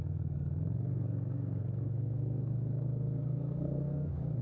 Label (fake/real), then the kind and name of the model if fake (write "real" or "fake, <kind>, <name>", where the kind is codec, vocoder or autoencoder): fake, codec, SNAC